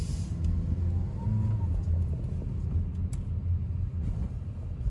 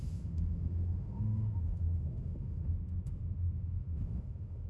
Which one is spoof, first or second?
second